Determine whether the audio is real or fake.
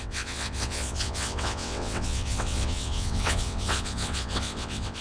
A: fake